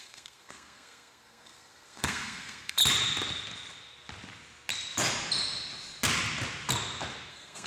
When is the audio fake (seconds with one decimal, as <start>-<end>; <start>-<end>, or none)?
0.0-2.8; 7.3-7.7